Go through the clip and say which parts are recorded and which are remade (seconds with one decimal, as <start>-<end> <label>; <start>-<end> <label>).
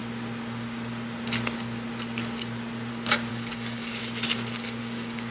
0.0-3.3 recorded; 3.3-4.0 remade; 4.0-4.8 recorded; 4.8-5.3 remade